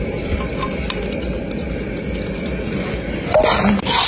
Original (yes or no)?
yes